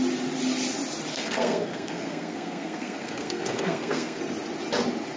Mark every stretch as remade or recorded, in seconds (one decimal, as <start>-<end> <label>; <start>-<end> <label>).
0.0-1.1 recorded; 1.1-4.2 remade; 4.2-5.2 recorded